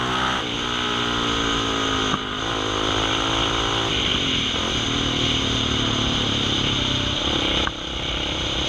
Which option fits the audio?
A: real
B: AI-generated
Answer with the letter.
A